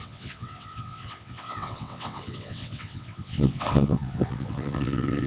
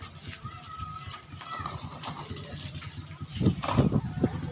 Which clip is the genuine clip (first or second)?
second